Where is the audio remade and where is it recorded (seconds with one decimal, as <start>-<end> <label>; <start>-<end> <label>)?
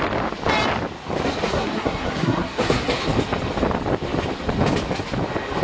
0.0-1.5 recorded; 1.5-3.0 remade; 3.0-5.6 recorded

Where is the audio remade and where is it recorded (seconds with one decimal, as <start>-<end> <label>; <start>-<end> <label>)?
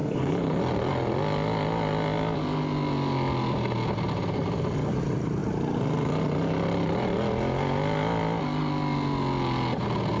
0.0-0.6 remade; 0.6-10.2 recorded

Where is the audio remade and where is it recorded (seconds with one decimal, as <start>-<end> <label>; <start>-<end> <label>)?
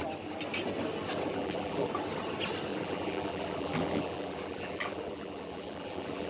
0.0-1.3 recorded; 1.3-1.9 remade; 1.9-2.7 recorded; 2.7-6.3 remade